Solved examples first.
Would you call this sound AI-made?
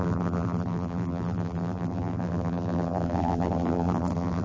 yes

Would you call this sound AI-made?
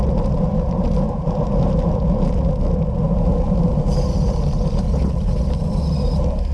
no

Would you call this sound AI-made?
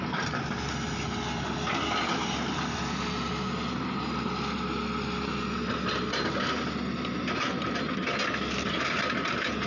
no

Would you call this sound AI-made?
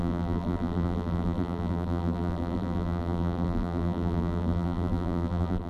yes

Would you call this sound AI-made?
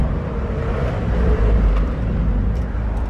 yes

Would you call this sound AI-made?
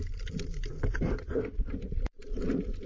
no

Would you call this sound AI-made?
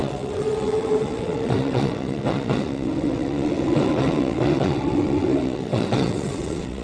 yes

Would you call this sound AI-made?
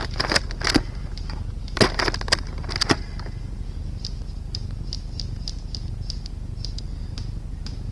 no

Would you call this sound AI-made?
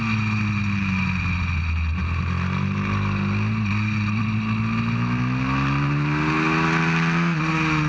no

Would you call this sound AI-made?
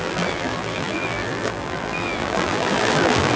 yes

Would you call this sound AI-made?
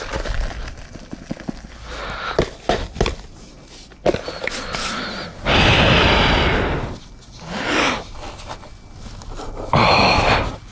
no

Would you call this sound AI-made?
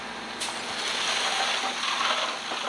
no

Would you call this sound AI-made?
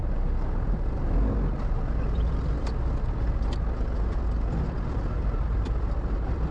no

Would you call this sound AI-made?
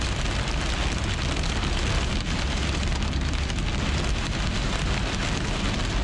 no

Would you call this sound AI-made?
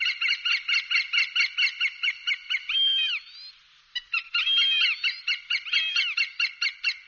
no